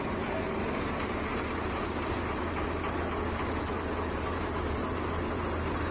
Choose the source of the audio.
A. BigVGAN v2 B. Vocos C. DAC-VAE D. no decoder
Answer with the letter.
D